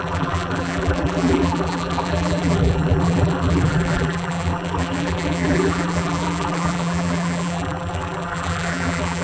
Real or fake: fake